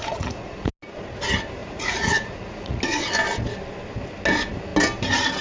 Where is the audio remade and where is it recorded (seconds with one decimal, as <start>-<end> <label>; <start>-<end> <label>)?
0.0-0.7 remade; 0.7-1.6 recorded; 1.6-2.8 remade; 2.8-5.4 recorded